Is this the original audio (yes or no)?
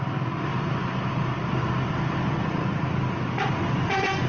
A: yes